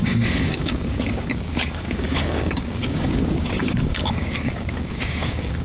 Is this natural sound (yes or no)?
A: no